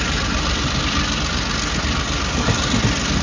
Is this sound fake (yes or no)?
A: no